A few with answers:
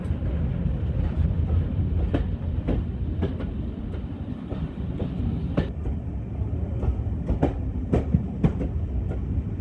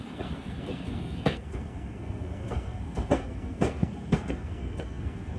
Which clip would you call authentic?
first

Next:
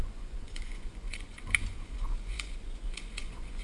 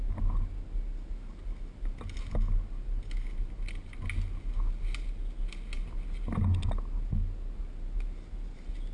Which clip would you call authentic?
second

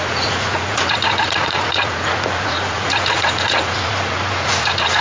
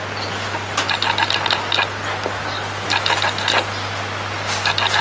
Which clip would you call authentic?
second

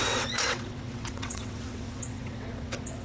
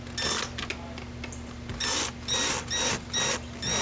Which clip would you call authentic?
second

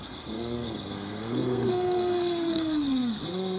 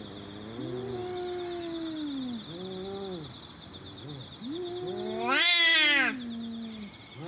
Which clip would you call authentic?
second